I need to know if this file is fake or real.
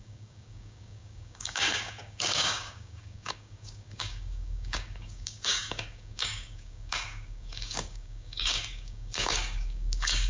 fake